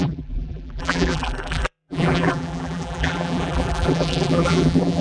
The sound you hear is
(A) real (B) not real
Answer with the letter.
B